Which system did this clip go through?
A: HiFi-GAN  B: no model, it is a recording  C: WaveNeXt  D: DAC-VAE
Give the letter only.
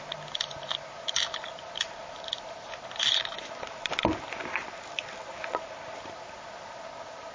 B